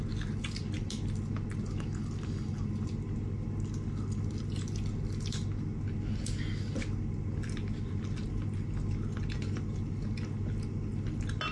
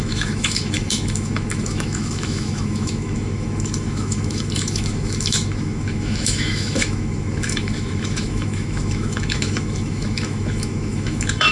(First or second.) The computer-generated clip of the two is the second